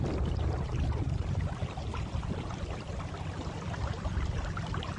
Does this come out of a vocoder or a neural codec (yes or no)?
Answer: no